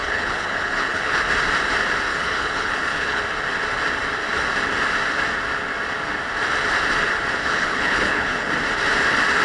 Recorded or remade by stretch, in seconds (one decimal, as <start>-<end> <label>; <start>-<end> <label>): 0.0-1.2 remade; 1.2-2.1 recorded; 2.1-3.2 remade; 3.2-7.4 recorded; 7.4-8.5 remade; 8.5-9.4 recorded